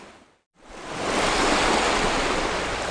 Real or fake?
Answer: real